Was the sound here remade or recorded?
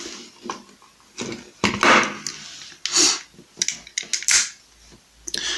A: recorded